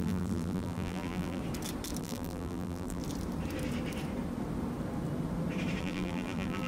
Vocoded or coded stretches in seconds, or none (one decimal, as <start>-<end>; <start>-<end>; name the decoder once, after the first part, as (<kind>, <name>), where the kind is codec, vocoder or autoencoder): 0.0-1.4 (vocoder, BigVGAN v2); 2.0-3.0; 5.8-6.7